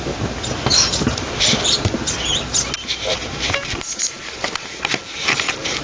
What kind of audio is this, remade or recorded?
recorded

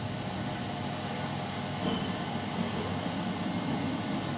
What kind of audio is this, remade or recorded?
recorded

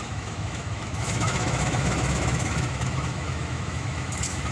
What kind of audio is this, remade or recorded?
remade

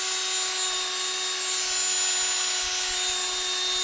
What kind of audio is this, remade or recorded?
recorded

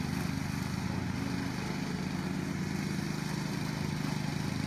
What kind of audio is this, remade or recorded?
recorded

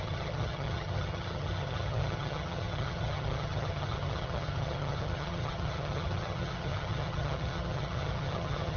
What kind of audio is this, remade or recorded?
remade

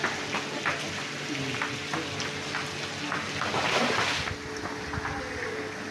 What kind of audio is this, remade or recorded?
recorded